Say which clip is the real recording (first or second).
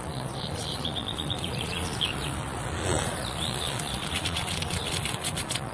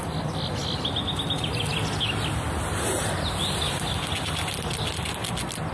second